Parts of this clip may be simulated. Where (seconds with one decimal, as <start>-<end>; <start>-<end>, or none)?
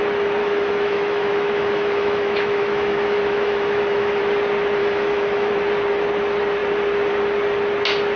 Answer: 0.4-4.2; 4.8-5.5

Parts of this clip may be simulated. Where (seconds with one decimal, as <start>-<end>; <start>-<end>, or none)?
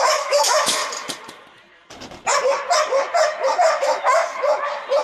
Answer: 0.0-0.8; 3.8-4.2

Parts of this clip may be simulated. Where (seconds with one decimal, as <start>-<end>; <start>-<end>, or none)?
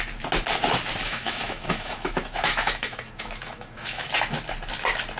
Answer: 1.0-4.1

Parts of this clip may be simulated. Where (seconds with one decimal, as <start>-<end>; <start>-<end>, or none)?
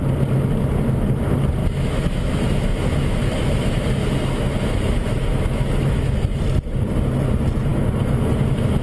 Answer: 1.6-6.4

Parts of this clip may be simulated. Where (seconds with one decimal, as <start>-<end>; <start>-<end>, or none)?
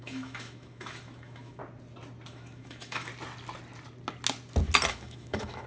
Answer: 0.0-1.6; 2.3-3.1; 4.9-5.7